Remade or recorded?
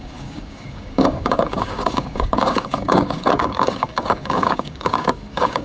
remade